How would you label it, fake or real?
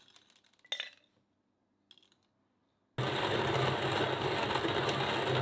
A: real